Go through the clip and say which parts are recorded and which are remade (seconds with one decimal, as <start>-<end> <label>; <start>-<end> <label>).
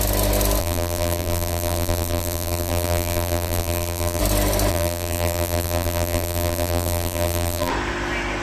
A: 0.0-0.6 recorded; 0.6-4.2 remade; 4.2-4.7 recorded; 4.7-7.7 remade; 7.7-8.4 recorded